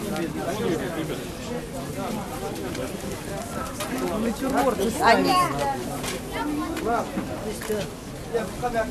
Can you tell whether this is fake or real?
real